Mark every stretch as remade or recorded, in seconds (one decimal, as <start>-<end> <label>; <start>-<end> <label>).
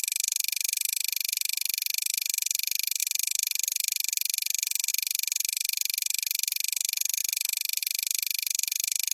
0.0-9.1 recorded